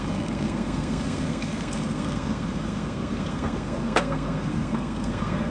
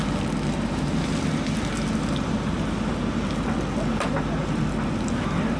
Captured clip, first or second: second